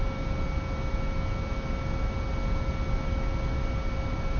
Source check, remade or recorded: recorded